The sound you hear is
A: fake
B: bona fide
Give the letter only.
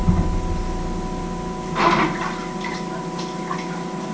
B